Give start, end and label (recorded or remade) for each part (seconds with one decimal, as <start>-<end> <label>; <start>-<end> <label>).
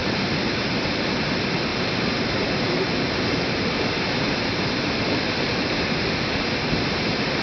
0.0-1.2 remade; 1.2-1.7 recorded; 1.7-5.1 remade; 5.1-7.4 recorded